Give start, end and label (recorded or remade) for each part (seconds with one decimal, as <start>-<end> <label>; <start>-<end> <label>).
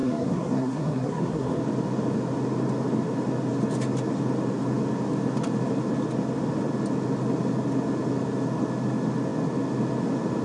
0.0-1.6 remade; 1.6-10.4 recorded